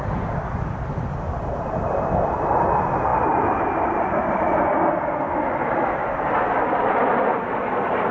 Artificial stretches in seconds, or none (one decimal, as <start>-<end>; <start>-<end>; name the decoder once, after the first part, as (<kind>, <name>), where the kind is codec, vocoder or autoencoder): none